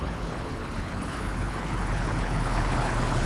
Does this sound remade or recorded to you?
remade